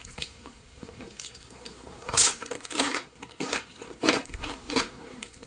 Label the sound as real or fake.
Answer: fake